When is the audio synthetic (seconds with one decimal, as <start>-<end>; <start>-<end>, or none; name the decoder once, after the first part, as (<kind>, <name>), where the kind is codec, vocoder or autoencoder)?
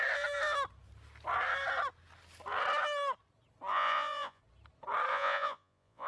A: 3.7-4.4 (vocoder, Vocos); 5.1-6.1